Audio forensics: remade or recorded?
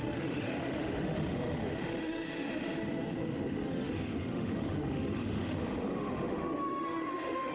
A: remade